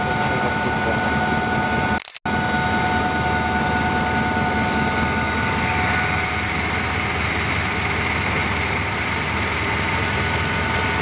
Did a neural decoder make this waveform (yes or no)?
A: no